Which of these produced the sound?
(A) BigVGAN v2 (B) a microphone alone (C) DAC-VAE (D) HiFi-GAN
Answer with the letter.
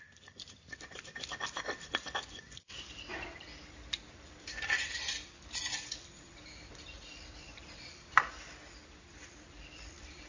A